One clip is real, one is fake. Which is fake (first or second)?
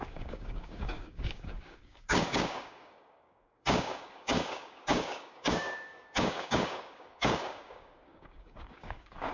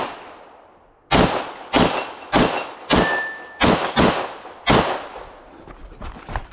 first